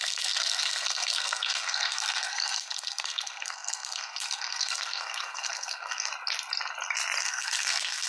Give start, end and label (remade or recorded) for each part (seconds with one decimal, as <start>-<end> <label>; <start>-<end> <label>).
0.0-6.1 remade; 6.1-7.2 recorded; 7.2-8.1 remade